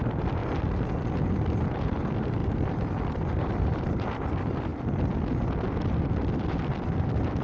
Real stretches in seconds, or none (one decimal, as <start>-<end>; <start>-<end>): 0.4-1.5; 4.7-6.2

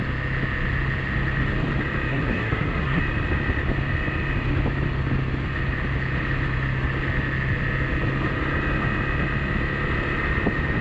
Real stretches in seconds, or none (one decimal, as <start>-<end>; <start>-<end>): 0.0-2.1; 3.0-10.8

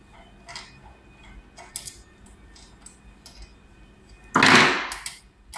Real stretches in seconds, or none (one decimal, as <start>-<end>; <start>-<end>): 0.0-5.6

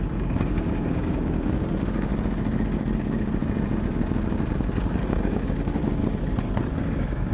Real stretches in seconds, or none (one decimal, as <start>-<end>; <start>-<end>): 2.1-3.0; 3.4-4.8; 6.0-6.7

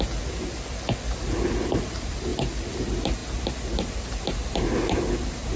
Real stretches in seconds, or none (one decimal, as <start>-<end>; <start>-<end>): 0.0-5.6

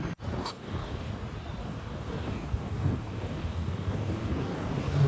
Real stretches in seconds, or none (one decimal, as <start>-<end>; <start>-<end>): 0.0-0.4; 1.1-1.6

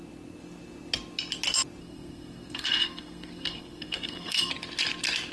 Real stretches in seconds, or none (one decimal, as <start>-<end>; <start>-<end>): 0.0-1.8; 4.5-5.3

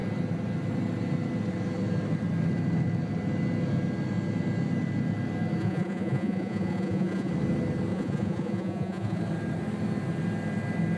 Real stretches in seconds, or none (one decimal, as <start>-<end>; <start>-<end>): 0.0-5.6; 7.3-7.9; 9.2-11.0